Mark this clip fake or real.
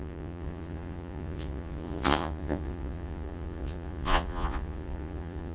fake